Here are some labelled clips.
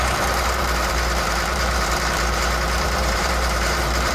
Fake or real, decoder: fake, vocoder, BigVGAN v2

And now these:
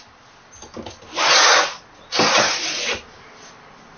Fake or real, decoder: real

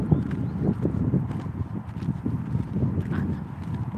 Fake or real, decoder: real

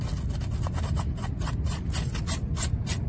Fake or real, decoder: real